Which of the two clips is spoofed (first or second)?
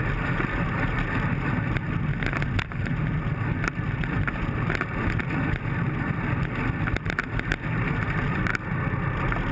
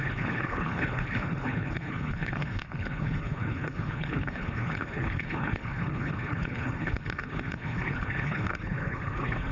second